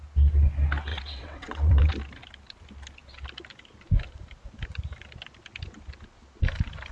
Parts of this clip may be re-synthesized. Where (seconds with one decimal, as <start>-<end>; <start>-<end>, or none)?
0.9-1.9